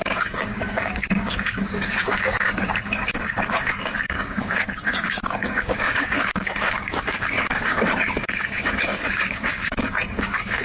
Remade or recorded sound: remade